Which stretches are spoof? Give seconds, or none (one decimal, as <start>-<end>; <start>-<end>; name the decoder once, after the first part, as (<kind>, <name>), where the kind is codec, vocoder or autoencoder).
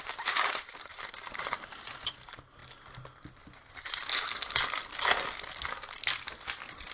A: 0.0-2.6 (vocoder, BigVGAN v2)